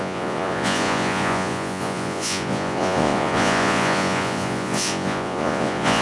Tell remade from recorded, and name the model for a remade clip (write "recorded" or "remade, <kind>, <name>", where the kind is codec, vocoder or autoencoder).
remade, vocoder, Vocos